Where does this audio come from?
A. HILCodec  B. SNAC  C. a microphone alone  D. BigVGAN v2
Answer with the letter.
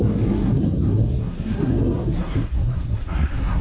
B